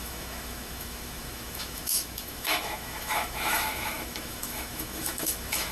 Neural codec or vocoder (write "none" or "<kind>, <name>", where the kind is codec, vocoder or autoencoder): autoencoder, DAC-VAE